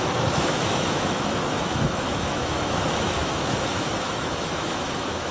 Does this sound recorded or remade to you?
remade